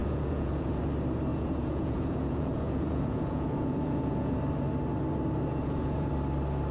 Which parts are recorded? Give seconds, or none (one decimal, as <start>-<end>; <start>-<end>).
0.8-1.3; 4.4-5.5; 6.1-6.7